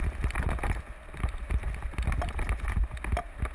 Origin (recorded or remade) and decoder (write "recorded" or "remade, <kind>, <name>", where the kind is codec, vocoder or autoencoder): recorded